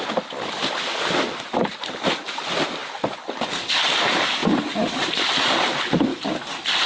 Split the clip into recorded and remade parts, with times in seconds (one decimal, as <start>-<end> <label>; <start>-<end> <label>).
0.0-4.4 recorded; 4.4-5.1 remade; 5.1-6.9 recorded